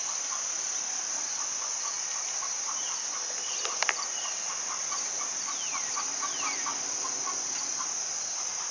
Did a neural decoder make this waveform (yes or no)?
no